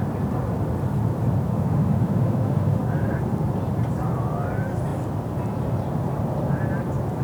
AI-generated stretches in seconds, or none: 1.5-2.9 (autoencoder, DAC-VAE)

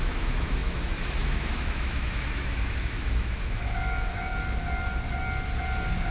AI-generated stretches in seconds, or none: 0.0-4.3 (autoencoder, DAC-VAE)

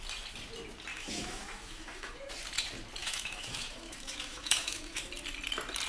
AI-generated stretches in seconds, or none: 0.9-2.3 (autoencoder, DAC-VAE); 3.0-5.1